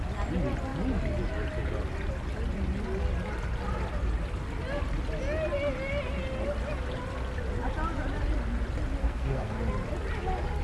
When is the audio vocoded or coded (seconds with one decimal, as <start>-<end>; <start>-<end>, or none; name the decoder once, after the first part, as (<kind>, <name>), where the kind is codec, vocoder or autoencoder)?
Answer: 9.0-9.6 (codec, SNAC)